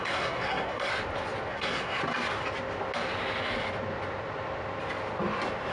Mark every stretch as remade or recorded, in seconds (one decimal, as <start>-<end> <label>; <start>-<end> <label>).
0.0-0.9 remade; 0.9-1.5 recorded; 1.5-2.0 remade; 2.0-5.7 recorded